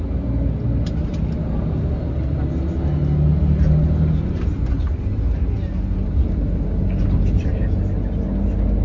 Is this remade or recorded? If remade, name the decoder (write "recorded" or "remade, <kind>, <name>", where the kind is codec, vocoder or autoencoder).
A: recorded